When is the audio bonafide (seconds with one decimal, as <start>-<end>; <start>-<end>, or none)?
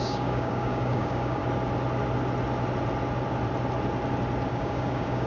1.4-4.5